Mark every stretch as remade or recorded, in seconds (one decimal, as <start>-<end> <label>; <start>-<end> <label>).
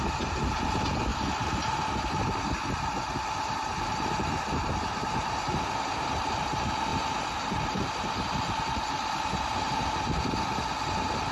0.0-11.3 recorded